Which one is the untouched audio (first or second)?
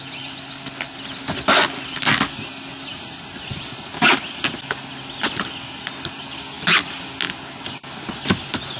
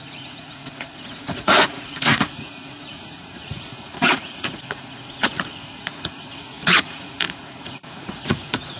first